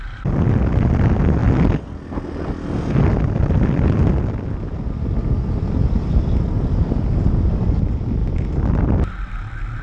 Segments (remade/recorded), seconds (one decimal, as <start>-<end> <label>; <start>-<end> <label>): 0.0-9.8 recorded